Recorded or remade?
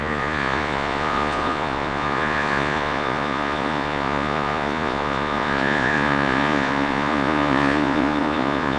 remade